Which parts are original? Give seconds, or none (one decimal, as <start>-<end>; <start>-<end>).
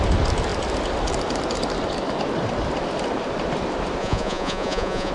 0.0-4.0